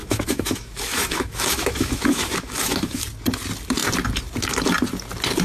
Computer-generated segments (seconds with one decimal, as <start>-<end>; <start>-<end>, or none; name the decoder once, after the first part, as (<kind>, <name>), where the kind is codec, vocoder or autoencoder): 0.0-3.0 (autoencoder, DAC-VAE)